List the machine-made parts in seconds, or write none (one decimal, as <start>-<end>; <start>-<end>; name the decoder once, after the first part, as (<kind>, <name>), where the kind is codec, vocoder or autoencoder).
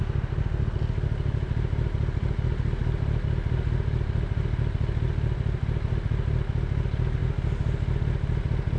none